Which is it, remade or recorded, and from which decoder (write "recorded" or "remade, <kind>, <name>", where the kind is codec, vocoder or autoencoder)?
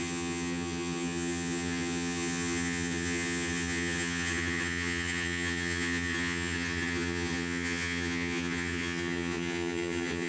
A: remade, vocoder, HiFi-GAN